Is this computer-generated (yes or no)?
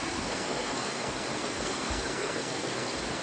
yes